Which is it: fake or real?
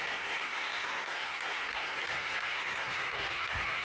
fake